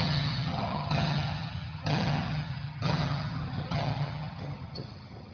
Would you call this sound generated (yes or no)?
yes